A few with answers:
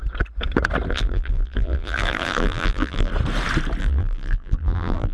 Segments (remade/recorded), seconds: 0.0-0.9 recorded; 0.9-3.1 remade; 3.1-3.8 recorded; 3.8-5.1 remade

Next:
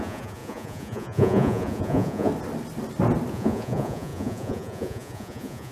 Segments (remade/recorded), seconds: 0.0-2.3 remade; 2.3-3.3 recorded; 3.3-5.7 remade

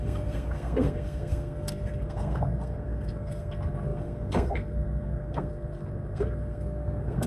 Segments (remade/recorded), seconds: 0.0-7.3 remade

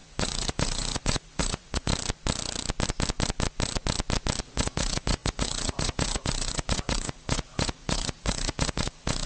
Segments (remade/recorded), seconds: 0.0-1.9 remade; 1.9-4.4 recorded; 4.4-9.3 remade

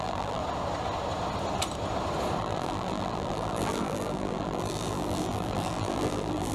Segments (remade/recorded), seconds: 0.0-0.4 remade; 0.4-2.4 recorded; 2.4-6.5 remade

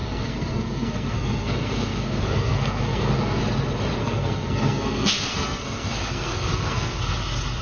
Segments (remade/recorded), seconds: 0.0-3.4 remade; 3.4-4.0 recorded; 4.0-7.0 remade; 7.0-7.6 recorded

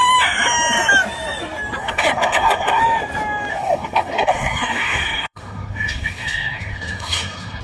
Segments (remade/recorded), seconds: 0.0-1.8 recorded; 1.8-2.8 remade; 2.8-3.5 recorded; 3.5-7.6 remade